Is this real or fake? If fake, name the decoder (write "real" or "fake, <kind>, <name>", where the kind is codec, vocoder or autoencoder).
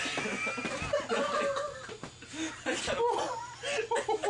real